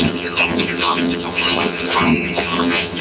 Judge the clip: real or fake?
fake